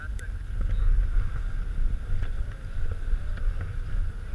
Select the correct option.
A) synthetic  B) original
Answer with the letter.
B